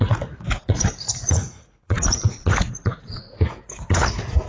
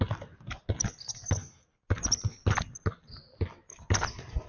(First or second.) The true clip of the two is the second